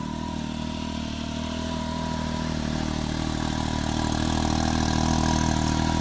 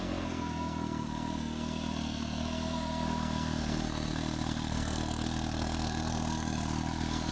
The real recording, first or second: first